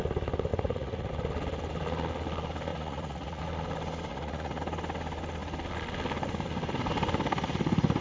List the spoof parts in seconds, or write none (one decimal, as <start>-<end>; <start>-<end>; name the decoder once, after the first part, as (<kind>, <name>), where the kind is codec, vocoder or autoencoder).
0.5-1.1 (vocoder, Vocos); 2.7-3.4; 4.1-4.6